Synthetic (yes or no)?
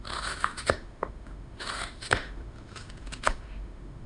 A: yes